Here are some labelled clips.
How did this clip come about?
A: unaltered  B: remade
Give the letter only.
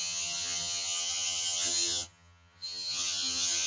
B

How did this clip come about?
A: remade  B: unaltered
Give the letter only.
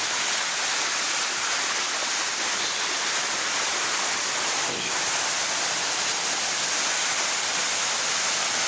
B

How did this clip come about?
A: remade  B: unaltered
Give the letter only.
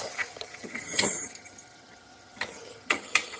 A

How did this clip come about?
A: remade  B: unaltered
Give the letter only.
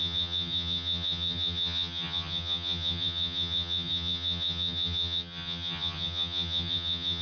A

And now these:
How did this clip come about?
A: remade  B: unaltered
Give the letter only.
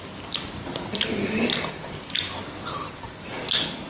B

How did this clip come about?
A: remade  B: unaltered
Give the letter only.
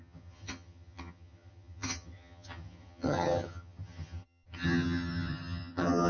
A